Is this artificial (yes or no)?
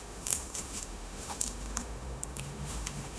yes